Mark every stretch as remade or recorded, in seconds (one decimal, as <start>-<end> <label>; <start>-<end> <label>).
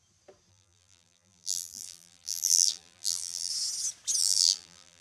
0.0-0.5 recorded; 0.5-3.5 remade; 3.5-4.2 recorded; 4.2-5.0 remade